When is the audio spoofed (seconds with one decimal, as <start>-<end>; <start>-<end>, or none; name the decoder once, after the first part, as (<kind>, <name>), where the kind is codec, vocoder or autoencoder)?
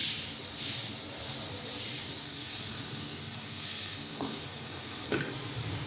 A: 2.2-5.1 (codec, SNAC)